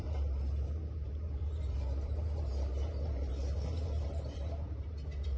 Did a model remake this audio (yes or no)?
yes